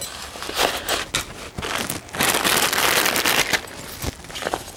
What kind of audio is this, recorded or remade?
recorded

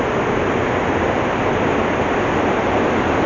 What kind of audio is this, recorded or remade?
recorded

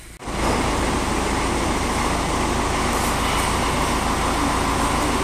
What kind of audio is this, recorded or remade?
recorded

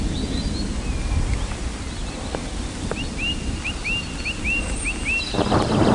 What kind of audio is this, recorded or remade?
recorded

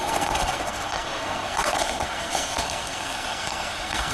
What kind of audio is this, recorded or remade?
remade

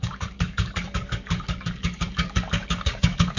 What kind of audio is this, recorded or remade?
remade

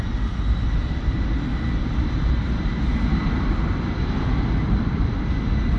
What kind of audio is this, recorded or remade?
recorded